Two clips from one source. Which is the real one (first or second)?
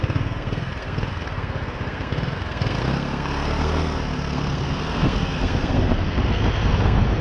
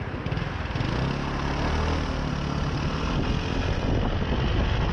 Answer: second